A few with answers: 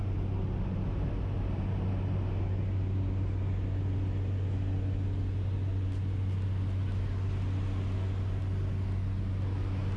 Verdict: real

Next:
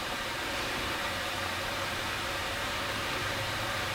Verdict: fake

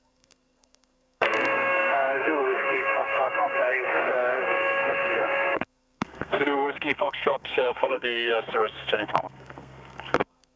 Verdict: fake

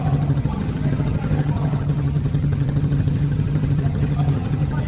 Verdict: fake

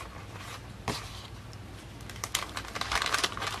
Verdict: real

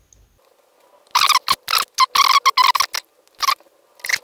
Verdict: real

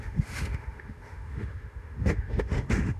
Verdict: fake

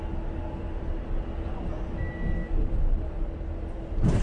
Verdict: real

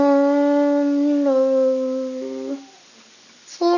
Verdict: real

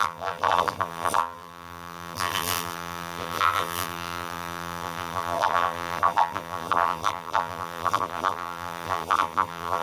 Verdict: fake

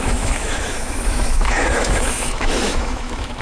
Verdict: fake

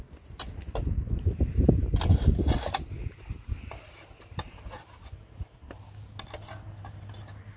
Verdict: real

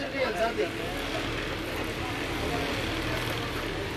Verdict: real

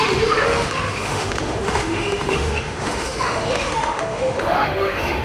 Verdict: fake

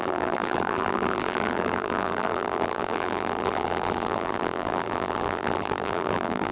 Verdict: fake